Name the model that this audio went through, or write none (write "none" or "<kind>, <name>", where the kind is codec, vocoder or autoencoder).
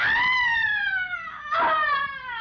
none